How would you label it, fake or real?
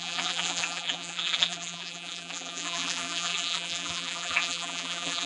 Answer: fake